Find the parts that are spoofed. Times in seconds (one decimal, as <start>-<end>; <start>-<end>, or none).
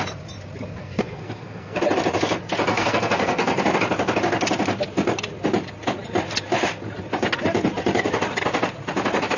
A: 0.8-1.8; 2.7-3.6